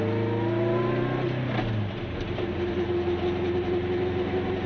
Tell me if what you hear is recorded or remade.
recorded